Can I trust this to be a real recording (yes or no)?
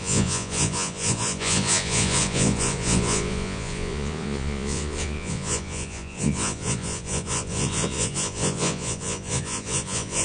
no